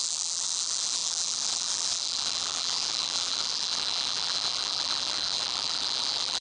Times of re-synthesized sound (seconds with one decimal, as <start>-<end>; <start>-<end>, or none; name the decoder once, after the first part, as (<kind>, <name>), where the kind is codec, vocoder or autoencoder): 0.0-6.4 (vocoder, BigVGAN v2)